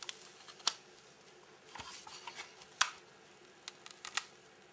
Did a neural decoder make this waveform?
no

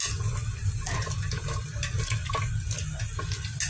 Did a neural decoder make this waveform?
no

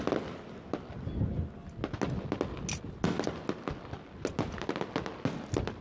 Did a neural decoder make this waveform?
no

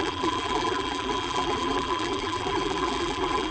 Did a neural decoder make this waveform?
yes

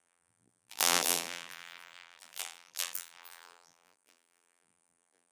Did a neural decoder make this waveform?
yes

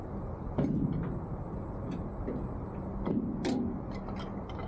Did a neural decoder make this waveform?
yes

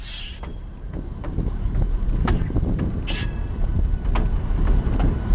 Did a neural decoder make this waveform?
no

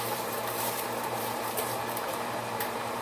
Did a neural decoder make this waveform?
yes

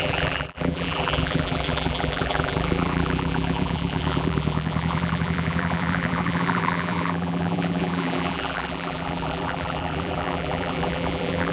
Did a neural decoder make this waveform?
yes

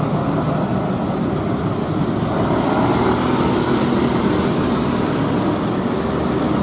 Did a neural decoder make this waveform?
no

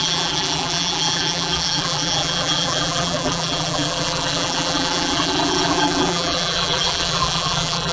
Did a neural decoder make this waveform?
yes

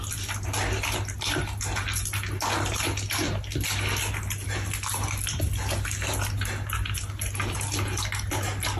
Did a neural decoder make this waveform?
no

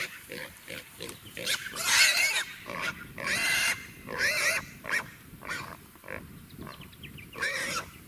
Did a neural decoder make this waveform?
yes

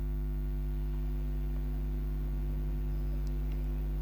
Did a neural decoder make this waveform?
no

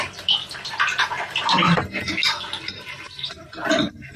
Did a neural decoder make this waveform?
no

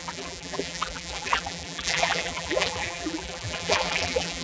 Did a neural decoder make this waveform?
yes